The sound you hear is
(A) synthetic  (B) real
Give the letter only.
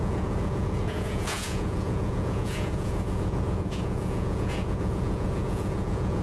A